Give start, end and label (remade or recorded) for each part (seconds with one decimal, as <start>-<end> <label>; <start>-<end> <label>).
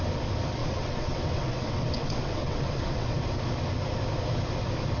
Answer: 0.0-0.6 recorded; 0.6-3.2 remade; 3.2-5.0 recorded